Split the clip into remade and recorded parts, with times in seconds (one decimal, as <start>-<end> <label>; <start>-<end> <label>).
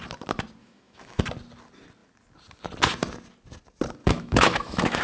0.0-0.6 recorded; 0.6-1.2 remade; 1.2-4.0 recorded; 4.0-5.0 remade